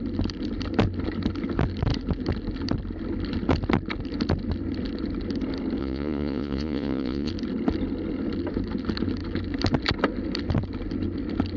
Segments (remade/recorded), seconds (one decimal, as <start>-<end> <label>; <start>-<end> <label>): 0.0-5.8 recorded; 5.8-7.3 remade; 7.3-11.6 recorded